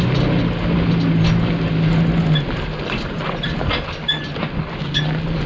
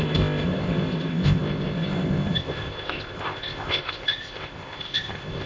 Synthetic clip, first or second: second